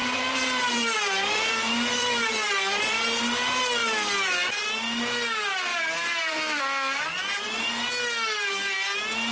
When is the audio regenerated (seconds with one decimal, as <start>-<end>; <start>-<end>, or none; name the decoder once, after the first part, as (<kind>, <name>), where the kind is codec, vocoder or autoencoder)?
0.0-3.0 (vocoder, BigVGAN v2); 5.7-6.6